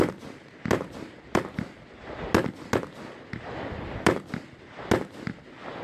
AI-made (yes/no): no